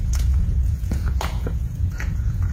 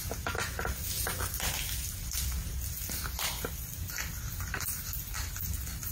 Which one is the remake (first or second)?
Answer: first